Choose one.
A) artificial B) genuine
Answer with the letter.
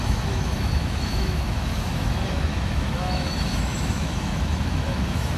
A